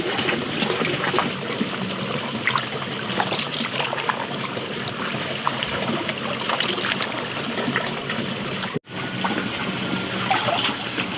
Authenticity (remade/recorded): recorded